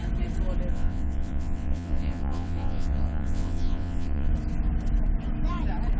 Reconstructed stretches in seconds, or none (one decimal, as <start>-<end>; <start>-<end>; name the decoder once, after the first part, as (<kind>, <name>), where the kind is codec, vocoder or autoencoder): 0.7-4.3 (vocoder, WaveNeXt)